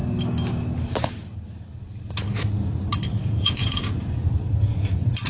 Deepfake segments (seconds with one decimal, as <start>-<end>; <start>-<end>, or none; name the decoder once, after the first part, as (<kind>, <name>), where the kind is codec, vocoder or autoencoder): 3.2-4.0 (vocoder, Vocos)